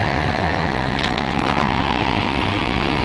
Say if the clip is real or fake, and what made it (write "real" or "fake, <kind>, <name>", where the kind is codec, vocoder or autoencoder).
fake, vocoder, WaveNeXt